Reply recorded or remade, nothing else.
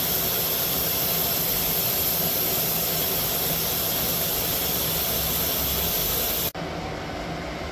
recorded